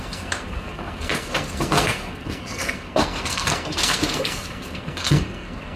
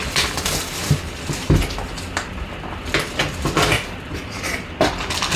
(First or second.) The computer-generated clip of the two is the first